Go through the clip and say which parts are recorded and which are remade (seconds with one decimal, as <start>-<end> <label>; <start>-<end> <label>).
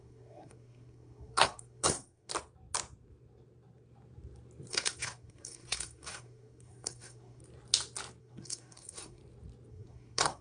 0.0-2.3 remade; 2.3-4.7 recorded; 4.7-7.4 remade; 7.4-8.2 recorded; 8.2-9.2 remade; 9.2-9.7 recorded; 9.7-10.4 remade